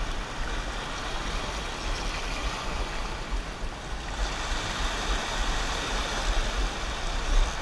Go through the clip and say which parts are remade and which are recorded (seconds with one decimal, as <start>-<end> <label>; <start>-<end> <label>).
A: 0.0-2.4 recorded; 2.4-3.0 remade; 3.0-7.6 recorded